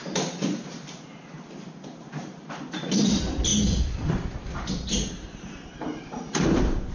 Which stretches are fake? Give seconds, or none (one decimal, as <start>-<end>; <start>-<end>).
0.0-3.5; 5.1-6.9